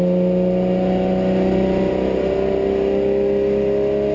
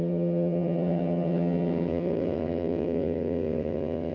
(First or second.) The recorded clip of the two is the first